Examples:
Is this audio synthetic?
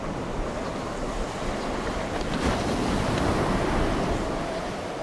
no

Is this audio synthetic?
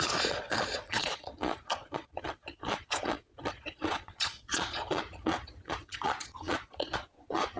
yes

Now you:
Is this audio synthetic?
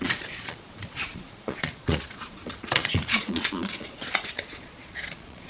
yes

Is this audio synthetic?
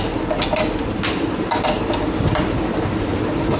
no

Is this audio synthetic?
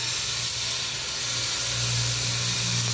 no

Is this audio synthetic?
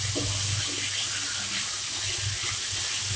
no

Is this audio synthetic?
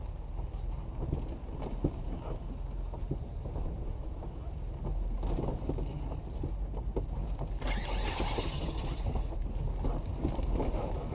no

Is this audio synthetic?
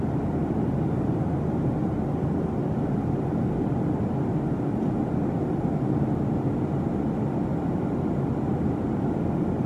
no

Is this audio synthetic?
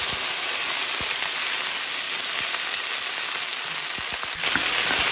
no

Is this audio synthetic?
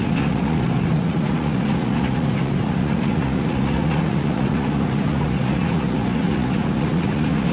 yes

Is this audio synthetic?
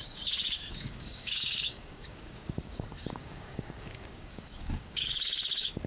yes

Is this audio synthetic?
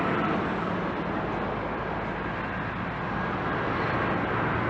no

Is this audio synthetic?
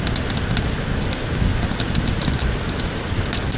no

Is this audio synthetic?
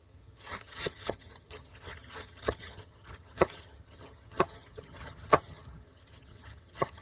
yes